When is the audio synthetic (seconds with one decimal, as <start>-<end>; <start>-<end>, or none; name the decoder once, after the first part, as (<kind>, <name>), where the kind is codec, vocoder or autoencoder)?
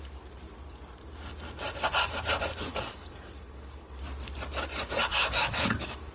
2.7-4.0 (codec, DAC); 5.1-6.1